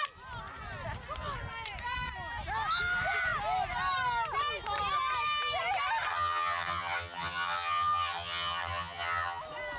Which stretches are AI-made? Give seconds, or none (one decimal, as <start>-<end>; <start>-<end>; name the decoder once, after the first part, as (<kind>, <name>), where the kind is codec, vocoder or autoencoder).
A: 6.1-9.4 (vocoder, HiFi-GAN)